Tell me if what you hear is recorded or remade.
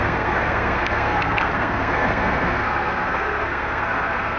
remade